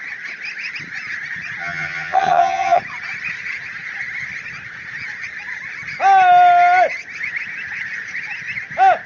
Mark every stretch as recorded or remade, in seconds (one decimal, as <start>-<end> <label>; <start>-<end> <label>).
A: 0.0-1.6 recorded; 1.6-2.8 remade; 2.8-9.1 recorded